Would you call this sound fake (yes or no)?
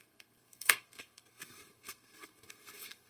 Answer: yes